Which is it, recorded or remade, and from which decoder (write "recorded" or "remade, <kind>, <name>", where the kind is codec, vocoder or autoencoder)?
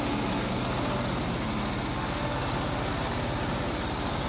recorded